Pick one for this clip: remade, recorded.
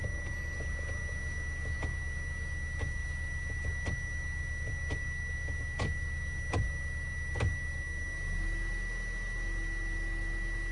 recorded